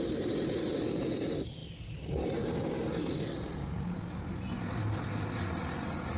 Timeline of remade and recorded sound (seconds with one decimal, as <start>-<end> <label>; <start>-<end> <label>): 0.0-6.2 recorded